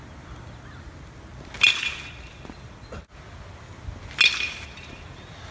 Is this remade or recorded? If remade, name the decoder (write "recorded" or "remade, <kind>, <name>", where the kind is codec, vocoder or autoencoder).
recorded